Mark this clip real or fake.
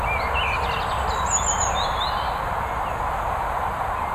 real